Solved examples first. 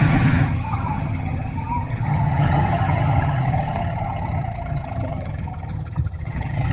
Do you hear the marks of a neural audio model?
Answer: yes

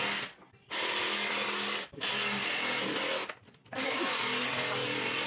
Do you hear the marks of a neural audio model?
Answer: no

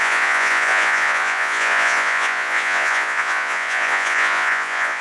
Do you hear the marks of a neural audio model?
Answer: yes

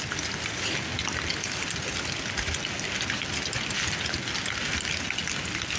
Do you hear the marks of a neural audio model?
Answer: no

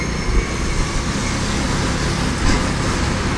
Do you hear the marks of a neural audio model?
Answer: no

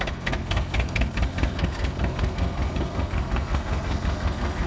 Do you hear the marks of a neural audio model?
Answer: yes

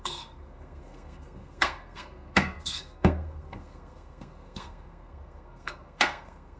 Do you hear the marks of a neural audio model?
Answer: yes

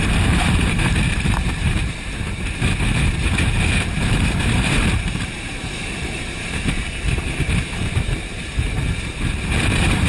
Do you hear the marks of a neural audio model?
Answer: yes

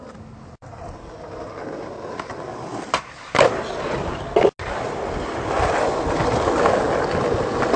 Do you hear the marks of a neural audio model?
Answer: no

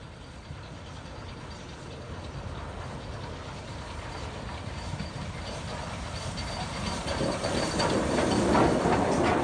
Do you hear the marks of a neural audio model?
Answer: no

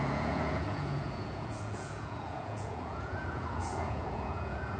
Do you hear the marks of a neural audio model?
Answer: yes